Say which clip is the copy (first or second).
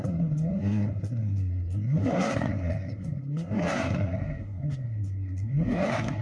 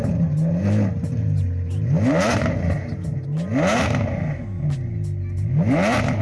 first